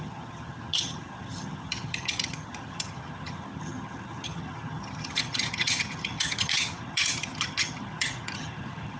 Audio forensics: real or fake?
fake